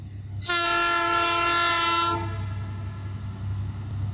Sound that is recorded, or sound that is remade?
recorded